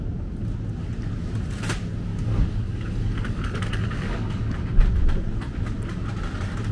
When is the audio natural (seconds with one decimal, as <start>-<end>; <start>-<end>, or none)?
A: 0.0-2.1; 4.8-6.7